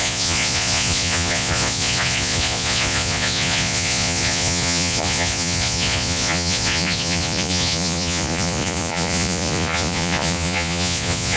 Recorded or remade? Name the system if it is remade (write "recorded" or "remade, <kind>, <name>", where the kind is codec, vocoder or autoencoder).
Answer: remade, vocoder, Vocos